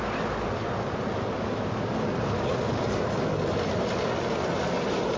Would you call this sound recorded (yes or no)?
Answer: yes